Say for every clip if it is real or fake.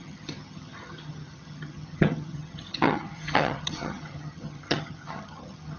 fake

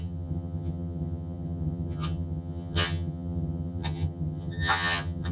fake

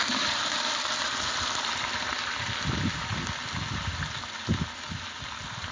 real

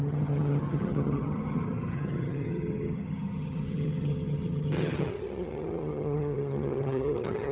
fake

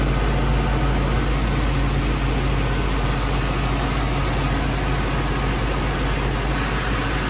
real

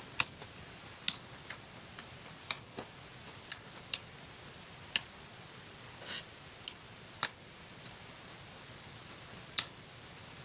real